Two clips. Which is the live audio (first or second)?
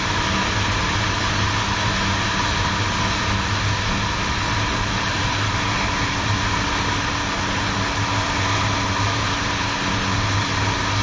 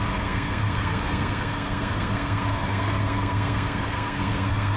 first